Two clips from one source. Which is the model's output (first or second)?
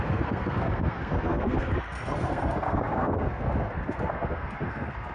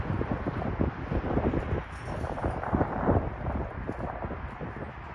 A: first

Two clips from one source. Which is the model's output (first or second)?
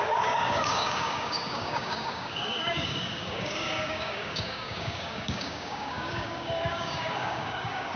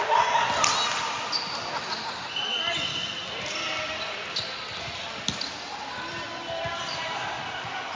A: first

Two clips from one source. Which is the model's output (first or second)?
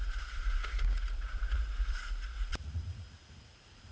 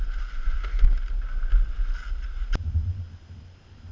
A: first